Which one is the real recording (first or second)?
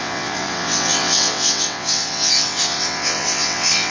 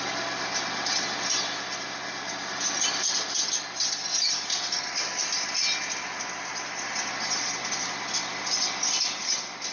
second